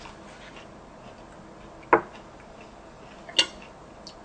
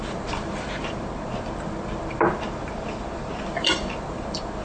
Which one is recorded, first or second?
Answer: first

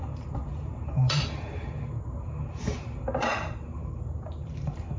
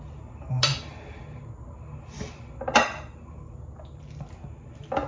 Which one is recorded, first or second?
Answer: second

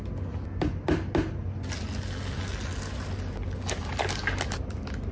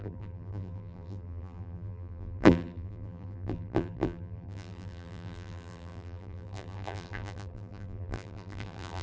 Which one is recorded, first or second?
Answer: first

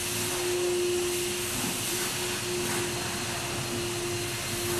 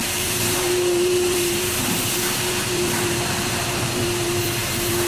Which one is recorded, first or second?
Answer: first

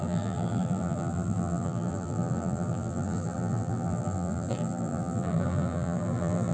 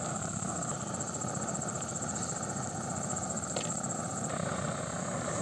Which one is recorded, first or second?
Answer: second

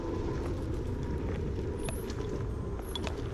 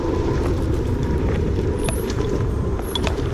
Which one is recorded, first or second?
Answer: first